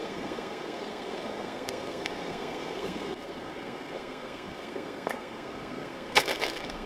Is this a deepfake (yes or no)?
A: yes